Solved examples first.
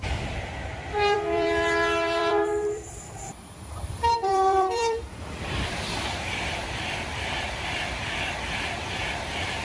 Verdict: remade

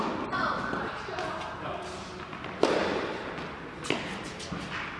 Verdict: recorded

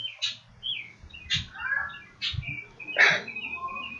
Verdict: recorded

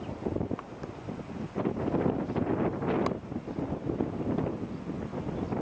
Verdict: recorded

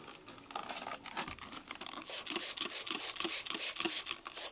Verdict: recorded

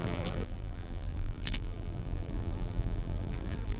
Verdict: remade